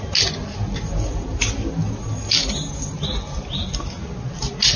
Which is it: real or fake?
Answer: real